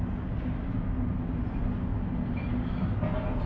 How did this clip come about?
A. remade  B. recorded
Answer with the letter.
B